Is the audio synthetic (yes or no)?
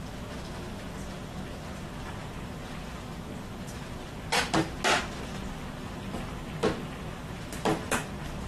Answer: no